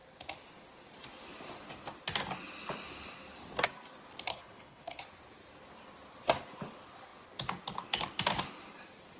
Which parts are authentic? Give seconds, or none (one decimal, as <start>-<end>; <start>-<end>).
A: 0.0-4.3; 5.0-9.2